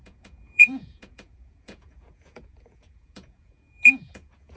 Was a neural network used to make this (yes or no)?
yes